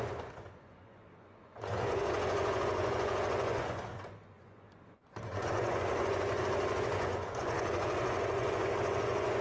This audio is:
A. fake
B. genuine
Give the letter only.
A